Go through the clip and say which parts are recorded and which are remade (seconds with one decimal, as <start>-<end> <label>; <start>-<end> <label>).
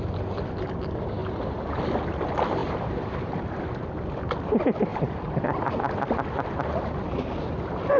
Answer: 0.0-1.2 recorded; 1.2-1.8 remade; 1.8-2.6 recorded; 2.6-3.6 remade; 3.6-8.0 recorded